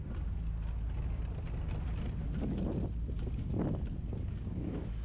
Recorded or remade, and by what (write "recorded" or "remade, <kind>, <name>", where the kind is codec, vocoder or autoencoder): recorded